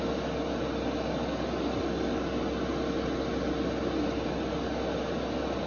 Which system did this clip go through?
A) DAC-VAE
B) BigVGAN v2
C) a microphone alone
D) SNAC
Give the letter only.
C